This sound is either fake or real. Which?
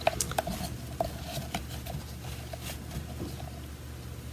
real